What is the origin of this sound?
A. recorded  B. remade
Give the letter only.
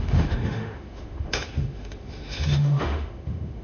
B